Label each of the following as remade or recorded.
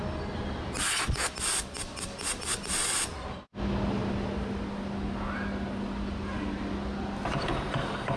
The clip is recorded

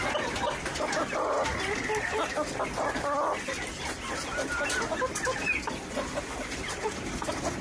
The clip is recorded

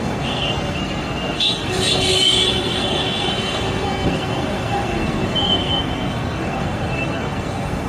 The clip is remade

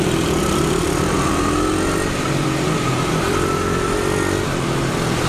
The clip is recorded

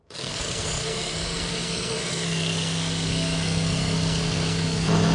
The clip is remade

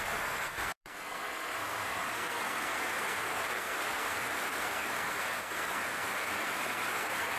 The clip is remade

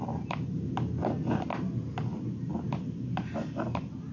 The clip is recorded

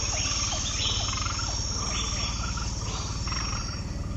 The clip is recorded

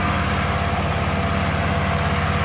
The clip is recorded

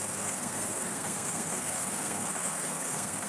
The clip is remade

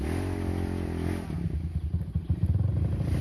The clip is recorded